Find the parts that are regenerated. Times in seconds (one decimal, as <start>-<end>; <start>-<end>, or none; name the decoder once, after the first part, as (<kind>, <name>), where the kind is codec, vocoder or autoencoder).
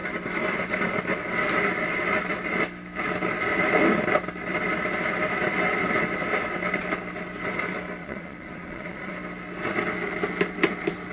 8.0-9.1 (vocoder, Vocos)